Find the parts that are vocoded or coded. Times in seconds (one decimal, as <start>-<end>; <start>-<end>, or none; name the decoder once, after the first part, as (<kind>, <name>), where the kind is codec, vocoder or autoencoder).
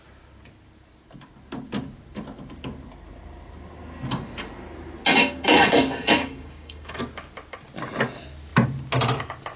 5.2-7.0 (codec, DAC)